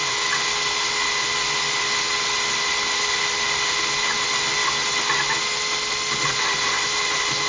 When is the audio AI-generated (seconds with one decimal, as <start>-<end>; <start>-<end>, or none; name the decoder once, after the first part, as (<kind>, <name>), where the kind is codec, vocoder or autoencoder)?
none

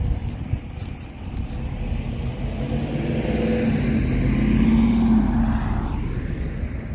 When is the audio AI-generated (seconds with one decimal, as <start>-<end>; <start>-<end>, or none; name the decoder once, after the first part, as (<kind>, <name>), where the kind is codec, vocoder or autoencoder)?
none

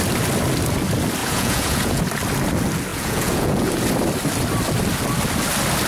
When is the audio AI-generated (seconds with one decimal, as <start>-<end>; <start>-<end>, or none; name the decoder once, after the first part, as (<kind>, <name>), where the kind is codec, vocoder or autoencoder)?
1.2-2.0 (vocoder, Vocos); 2.9-3.7

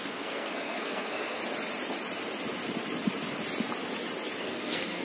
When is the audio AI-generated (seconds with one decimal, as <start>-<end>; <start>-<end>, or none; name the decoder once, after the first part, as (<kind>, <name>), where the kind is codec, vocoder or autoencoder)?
0.0-1.4 (codec, SNAC); 4.4-5.0